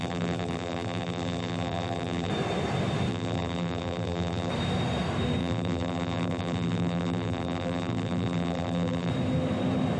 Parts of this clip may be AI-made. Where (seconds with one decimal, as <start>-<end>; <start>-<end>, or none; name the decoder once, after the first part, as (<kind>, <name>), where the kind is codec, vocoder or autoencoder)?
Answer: 0.0-2.3 (vocoder, BigVGAN v2); 3.1-4.5; 5.4-9.1